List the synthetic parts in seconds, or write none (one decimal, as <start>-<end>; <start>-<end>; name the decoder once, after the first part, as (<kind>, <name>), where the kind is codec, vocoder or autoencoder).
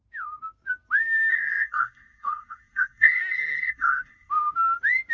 1.3-4.3 (codec, SNAC)